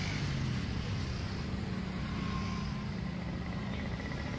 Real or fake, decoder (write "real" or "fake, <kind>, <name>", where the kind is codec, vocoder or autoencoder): real